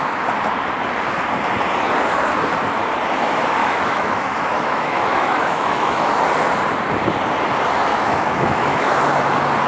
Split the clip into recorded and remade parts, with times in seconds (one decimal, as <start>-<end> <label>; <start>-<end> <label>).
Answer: 0.0-3.6 recorded; 3.6-6.1 remade; 6.1-7.9 recorded; 7.9-8.9 remade; 8.9-9.7 recorded